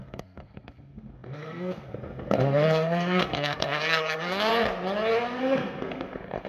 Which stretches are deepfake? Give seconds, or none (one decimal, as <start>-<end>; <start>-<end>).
0.0-4.5; 5.4-6.5